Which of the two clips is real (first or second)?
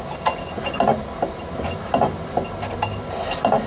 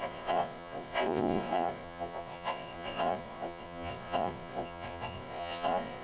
first